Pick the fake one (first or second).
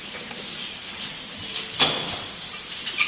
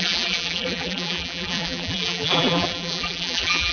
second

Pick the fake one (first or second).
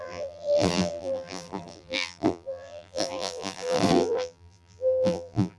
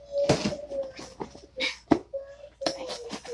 first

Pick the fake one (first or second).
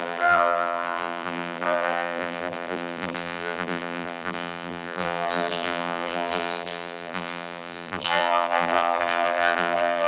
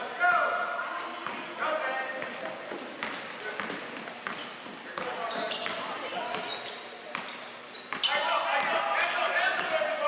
first